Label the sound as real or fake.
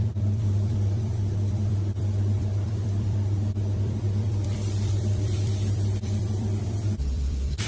fake